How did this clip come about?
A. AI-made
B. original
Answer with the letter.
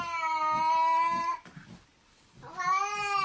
B